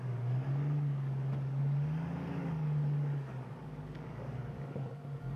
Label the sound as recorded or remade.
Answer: remade